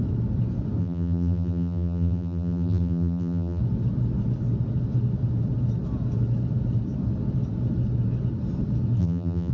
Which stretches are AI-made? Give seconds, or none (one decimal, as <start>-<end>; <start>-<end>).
0.8-3.6; 9.0-9.5